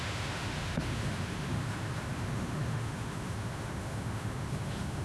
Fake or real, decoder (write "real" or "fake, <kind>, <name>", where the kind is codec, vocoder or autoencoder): fake, autoencoder, DAC-VAE